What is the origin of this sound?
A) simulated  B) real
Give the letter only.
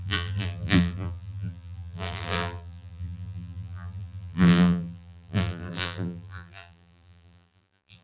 A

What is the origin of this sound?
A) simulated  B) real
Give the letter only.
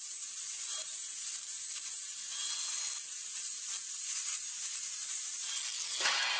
B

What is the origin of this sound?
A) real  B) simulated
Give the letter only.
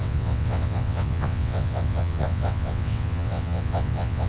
B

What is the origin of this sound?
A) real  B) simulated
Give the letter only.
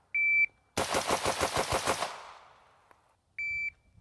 A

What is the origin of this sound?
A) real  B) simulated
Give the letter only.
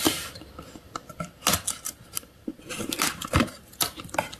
A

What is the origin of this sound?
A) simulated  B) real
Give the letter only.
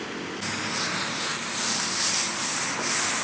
B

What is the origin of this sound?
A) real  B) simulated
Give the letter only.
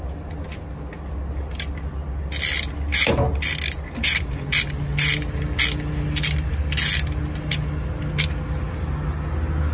A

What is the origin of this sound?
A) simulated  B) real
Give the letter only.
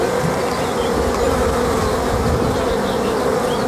B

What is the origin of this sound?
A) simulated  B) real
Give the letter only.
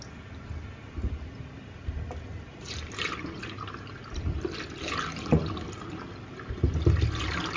B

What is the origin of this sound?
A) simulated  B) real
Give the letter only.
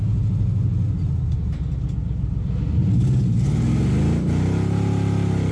B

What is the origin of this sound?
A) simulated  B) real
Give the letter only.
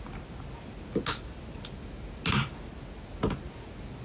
B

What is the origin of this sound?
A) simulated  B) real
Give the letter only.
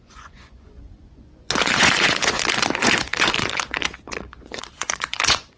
A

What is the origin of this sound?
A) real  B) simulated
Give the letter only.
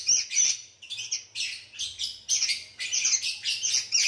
A